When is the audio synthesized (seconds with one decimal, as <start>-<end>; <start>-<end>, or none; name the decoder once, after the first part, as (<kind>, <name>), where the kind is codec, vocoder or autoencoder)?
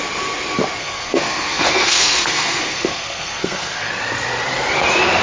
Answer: 0.8-3.9 (codec, SNAC)